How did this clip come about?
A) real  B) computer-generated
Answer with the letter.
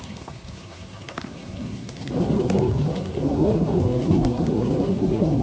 B